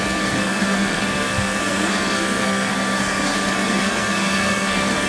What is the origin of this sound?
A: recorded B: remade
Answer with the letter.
B